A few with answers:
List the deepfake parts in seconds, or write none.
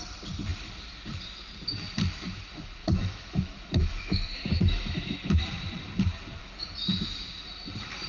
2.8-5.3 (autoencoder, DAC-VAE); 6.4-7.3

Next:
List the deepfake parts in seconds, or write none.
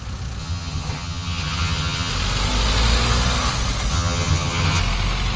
0.4-2.1 (vocoder, HiFi-GAN); 3.9-4.8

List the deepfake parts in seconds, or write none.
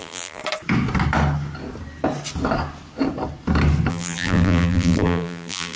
0.0-0.4 (vocoder, BigVGAN v2); 3.9-5.8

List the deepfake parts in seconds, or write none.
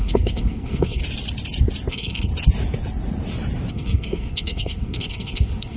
0.0-1.0 (codec, SNAC); 1.9-2.3; 3.7-5.8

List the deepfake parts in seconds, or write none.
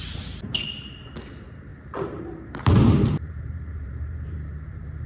1.7-4.5 (vocoder, BigVGAN v2)